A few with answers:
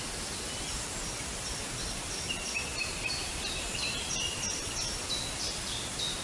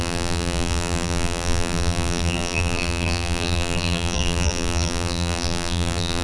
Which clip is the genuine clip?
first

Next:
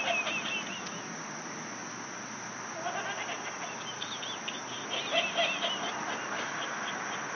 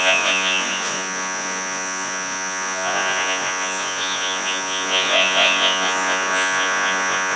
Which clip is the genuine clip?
first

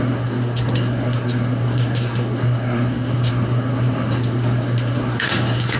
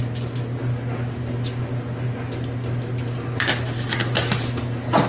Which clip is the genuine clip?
second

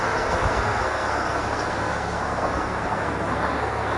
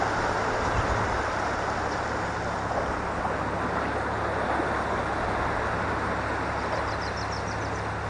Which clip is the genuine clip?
second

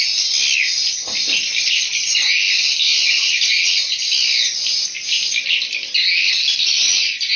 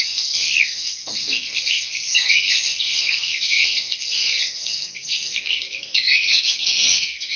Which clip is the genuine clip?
first